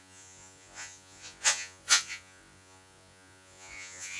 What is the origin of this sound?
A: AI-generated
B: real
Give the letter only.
A